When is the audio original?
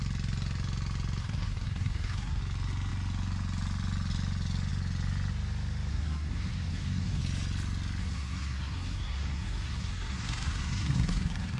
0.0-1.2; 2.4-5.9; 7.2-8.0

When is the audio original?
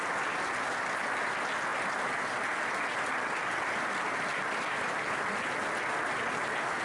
0.0-6.8